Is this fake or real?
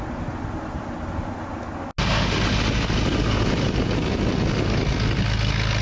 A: real